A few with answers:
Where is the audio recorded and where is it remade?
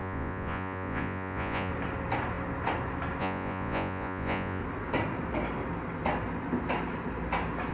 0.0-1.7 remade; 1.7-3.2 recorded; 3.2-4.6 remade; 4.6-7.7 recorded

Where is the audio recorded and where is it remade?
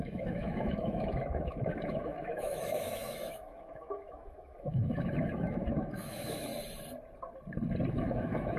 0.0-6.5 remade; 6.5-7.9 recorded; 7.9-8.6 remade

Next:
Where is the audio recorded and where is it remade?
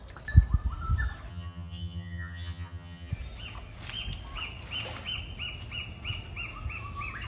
0.0-1.3 recorded; 1.3-3.1 remade; 3.1-7.3 recorded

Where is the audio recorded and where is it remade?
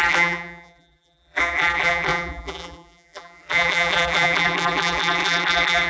0.0-5.9 remade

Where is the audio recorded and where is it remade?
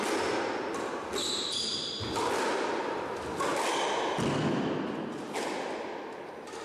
0.0-6.6 recorded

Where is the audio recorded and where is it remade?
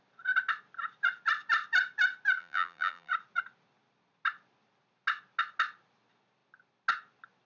0.0-2.4 recorded; 2.4-3.1 remade; 3.1-7.4 recorded